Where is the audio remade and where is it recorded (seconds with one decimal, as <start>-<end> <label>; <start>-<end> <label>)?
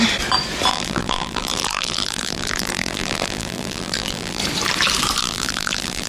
0.0-0.7 recorded; 0.7-4.4 remade; 4.4-5.2 recorded; 5.2-6.1 remade